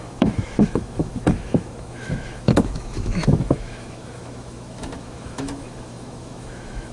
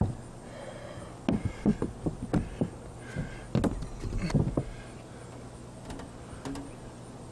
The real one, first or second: second